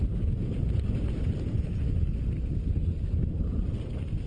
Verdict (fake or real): real